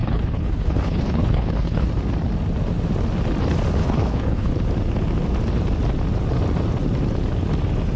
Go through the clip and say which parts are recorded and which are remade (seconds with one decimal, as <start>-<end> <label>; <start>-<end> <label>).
0.0-1.9 remade; 1.9-3.8 recorded; 3.8-4.5 remade; 4.5-8.0 recorded